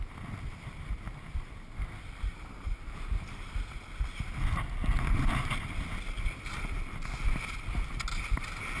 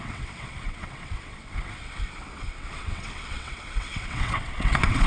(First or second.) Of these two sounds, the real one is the first